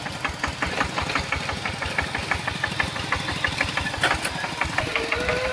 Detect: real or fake real